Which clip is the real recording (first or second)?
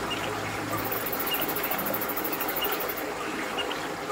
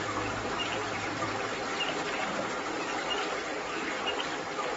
first